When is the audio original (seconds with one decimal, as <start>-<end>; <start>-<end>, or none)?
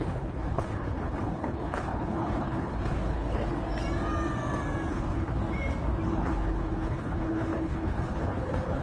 3.5-4.9; 5.4-6.1